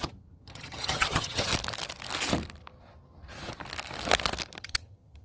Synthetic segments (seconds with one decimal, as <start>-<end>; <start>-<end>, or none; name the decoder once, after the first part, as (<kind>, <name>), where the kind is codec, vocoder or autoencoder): 0.0-1.5 (vocoder, HiFi-GAN); 4.6-5.2